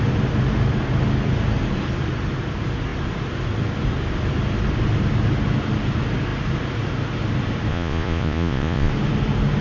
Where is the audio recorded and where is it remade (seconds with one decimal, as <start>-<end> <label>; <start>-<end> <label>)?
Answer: 0.0-7.7 recorded; 7.7-8.9 remade; 8.9-9.6 recorded